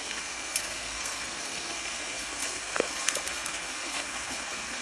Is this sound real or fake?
fake